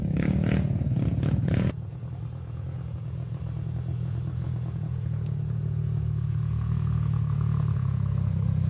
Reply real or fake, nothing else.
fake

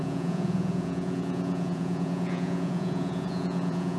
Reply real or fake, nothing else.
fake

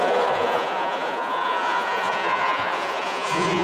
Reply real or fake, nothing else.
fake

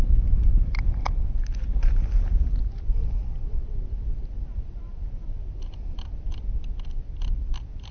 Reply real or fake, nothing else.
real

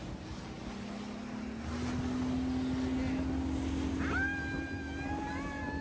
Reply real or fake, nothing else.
real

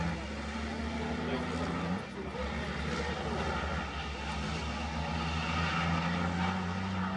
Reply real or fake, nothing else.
real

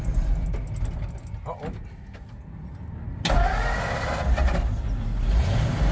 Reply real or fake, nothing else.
real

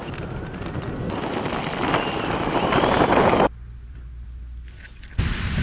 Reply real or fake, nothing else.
real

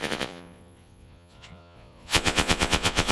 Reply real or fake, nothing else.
fake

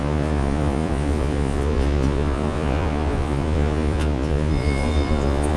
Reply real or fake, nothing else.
fake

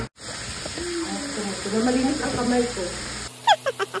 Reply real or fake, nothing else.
real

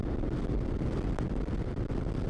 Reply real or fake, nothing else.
real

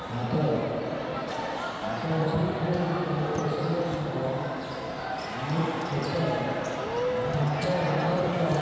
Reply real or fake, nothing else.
real